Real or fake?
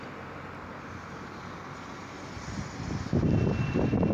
real